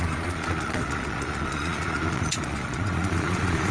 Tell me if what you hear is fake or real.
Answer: fake